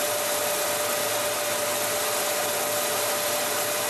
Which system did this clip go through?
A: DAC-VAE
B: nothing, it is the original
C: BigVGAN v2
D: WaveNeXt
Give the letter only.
B